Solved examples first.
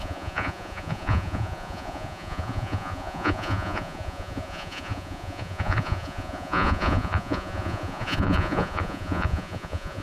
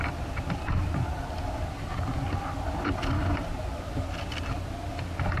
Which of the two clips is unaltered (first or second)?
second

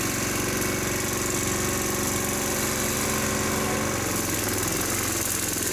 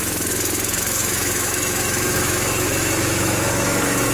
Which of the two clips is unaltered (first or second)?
first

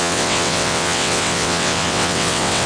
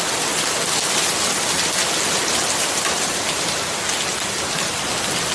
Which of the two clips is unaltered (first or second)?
second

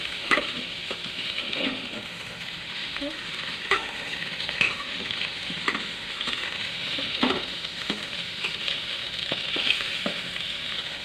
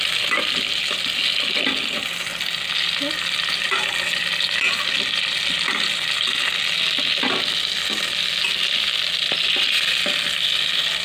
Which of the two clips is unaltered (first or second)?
second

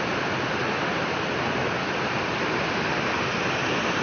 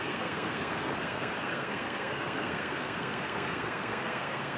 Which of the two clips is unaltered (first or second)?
first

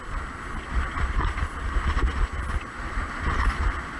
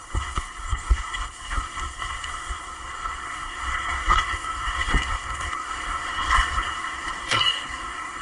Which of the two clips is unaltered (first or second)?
first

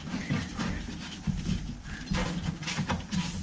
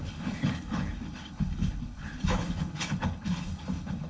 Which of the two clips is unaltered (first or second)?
first